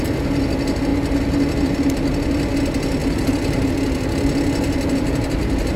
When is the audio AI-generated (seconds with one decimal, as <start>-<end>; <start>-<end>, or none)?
3.0-3.7